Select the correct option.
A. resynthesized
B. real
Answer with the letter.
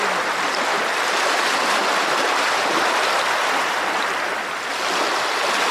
B